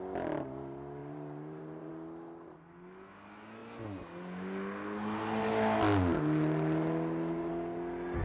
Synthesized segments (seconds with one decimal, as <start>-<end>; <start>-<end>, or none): 1.0-1.9